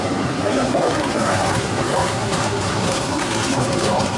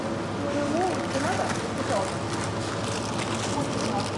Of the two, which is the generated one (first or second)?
first